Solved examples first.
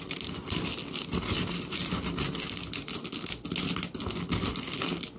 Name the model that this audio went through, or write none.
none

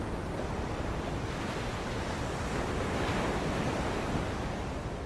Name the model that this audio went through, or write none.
none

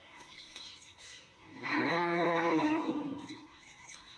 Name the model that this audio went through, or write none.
codec, SNAC